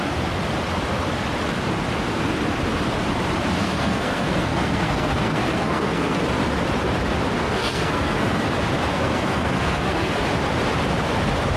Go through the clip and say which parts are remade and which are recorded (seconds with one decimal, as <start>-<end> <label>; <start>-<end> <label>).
0.0-3.6 recorded; 3.6-6.2 remade; 6.2-7.4 recorded; 7.4-8.5 remade; 8.5-8.9 recorded; 8.9-10.2 remade; 10.2-11.6 recorded